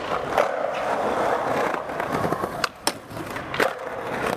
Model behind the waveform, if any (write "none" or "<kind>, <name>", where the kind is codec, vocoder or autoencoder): none